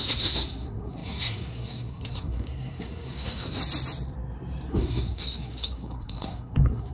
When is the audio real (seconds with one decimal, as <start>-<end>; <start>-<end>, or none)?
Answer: 3.6-4.7